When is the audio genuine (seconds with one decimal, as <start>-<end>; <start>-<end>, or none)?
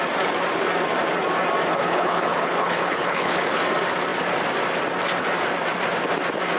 0.0-1.7; 3.6-6.6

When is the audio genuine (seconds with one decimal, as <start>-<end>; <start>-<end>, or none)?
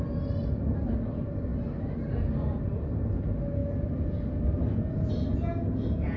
0.0-6.2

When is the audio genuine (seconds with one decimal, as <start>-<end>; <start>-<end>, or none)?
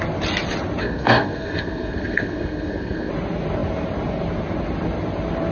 0.0-0.8; 3.1-5.5